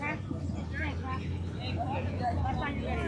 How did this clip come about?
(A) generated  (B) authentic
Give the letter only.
B